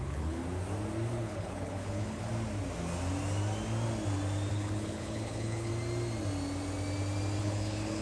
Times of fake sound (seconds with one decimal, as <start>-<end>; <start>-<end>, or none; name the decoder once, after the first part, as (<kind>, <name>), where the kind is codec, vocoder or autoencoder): 0.0-0.4 (codec, HILCodec); 1.2-2.3; 4.5-5.7; 7.4-8.0